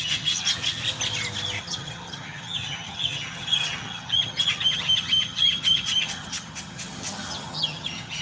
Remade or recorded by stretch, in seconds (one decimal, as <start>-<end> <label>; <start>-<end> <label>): 0.0-0.8 remade; 0.8-1.6 recorded; 1.6-8.2 remade